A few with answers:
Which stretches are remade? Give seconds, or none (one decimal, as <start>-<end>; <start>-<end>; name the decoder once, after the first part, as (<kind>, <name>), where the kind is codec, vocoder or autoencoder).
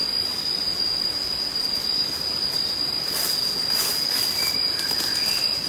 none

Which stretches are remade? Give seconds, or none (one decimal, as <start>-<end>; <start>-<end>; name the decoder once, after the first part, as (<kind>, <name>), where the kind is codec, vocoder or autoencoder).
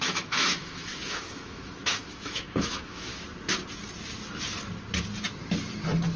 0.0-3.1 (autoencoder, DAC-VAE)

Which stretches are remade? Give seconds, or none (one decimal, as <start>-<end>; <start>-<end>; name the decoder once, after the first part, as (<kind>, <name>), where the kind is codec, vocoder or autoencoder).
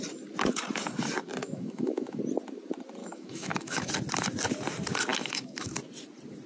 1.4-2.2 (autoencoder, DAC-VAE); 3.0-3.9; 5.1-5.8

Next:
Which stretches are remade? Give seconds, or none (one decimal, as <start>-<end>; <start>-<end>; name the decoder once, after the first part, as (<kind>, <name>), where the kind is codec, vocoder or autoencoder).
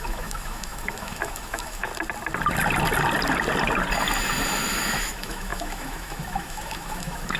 0.0-1.9 (autoencoder, DAC-VAE); 4.7-7.4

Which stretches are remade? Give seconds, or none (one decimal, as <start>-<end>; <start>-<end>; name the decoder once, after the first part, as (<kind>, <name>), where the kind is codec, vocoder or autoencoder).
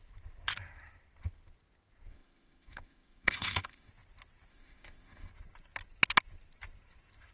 2.1-3.9 (autoencoder, DAC-VAE); 4.5-5.3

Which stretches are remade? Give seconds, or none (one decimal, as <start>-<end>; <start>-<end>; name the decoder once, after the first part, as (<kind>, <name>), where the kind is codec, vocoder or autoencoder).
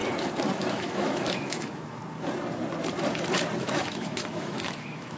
0.7-2.0 (autoencoder, DAC-VAE); 3.6-5.2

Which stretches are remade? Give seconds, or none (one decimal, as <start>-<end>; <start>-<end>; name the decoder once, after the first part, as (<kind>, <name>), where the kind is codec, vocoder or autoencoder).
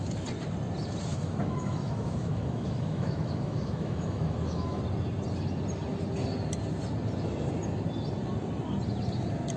1.1-4.8 (autoencoder, DAC-VAE)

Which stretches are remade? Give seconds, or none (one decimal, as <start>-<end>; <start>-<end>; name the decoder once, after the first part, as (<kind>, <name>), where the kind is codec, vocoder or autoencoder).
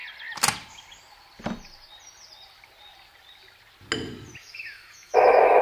4.4-5.6 (autoencoder, DAC-VAE)